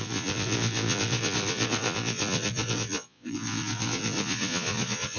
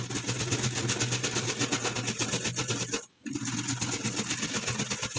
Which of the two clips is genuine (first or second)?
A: second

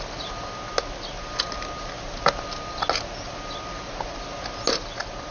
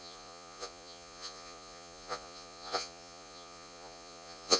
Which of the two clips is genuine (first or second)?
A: first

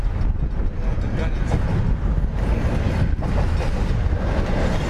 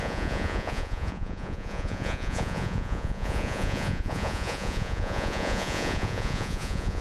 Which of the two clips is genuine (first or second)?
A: first